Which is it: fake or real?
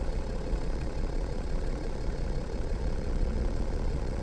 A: fake